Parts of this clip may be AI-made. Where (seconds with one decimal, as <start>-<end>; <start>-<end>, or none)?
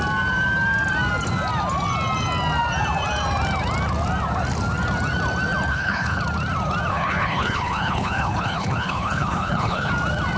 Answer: 5.7-6.2; 6.9-9.9